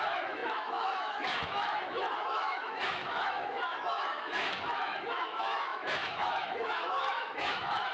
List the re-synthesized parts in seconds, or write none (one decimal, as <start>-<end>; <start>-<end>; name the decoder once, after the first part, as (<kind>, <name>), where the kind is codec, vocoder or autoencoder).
0.0-7.9 (autoencoder, DAC-VAE)